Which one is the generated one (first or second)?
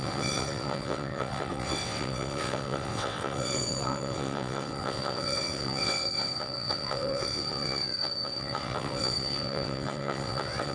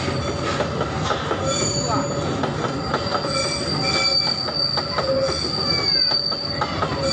first